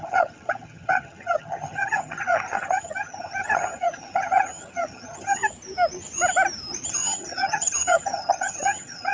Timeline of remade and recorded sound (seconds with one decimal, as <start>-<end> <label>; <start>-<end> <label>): 0.0-5.4 remade; 5.4-6.9 recorded; 6.9-9.1 remade